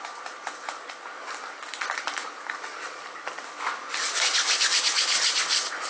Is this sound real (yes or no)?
yes